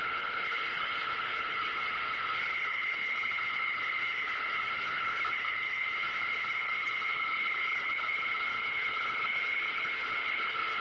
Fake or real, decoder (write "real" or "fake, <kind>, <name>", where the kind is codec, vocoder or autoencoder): fake, codec, HILCodec